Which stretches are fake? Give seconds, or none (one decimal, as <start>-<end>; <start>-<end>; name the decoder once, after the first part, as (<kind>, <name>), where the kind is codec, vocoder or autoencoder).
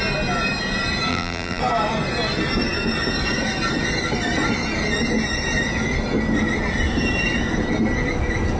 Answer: 1.1-1.6 (vocoder, BigVGAN v2)